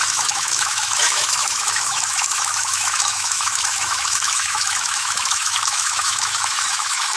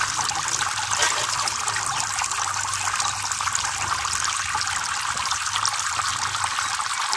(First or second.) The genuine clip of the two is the second